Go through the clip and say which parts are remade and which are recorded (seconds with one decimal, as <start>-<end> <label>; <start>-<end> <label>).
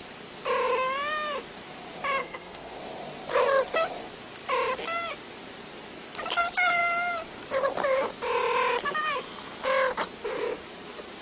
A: 0.0-2.2 recorded; 2.2-2.8 remade; 2.8-11.2 recorded